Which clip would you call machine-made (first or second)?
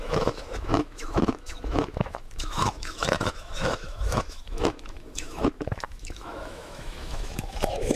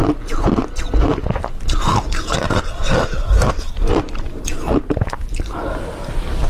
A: first